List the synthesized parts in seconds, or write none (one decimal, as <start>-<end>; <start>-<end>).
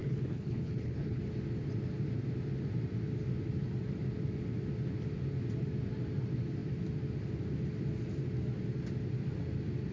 0.0-1.2